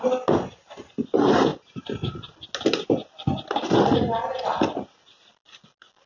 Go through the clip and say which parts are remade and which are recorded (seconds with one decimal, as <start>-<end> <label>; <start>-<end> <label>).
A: 0.0-6.1 recorded